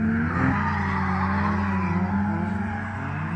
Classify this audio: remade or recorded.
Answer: recorded